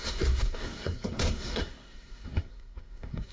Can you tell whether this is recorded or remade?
remade